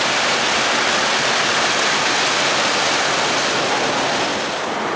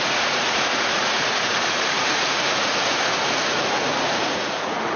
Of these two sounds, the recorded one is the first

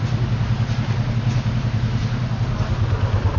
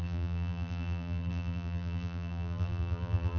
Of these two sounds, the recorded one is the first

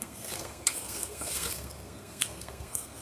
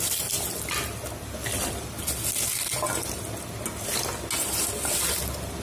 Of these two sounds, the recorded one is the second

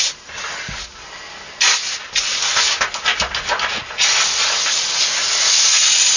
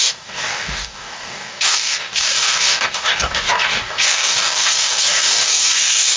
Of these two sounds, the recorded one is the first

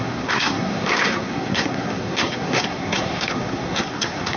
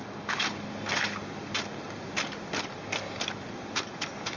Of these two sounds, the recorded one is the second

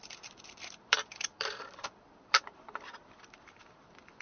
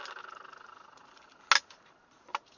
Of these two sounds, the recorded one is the second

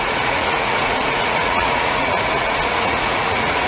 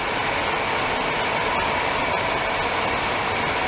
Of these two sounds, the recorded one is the second